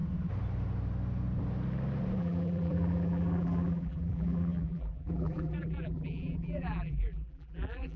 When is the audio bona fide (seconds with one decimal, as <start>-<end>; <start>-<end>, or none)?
0.0-2.2